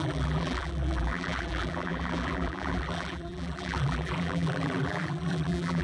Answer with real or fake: fake